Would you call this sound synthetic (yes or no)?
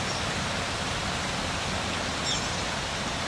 no